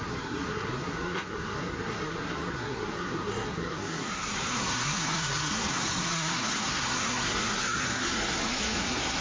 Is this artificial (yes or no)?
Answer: yes